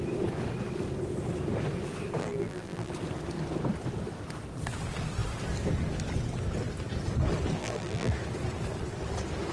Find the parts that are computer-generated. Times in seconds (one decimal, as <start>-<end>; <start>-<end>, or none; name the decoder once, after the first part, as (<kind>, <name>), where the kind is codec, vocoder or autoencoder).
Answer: 2.2-2.9 (vocoder, BigVGAN v2); 7.6-8.1